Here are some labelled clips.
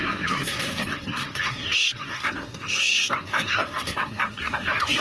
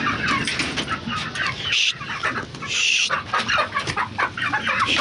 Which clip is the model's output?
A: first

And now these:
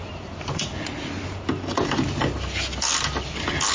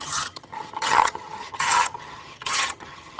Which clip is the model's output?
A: second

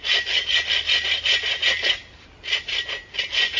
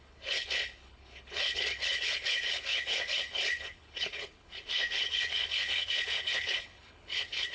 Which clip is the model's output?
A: second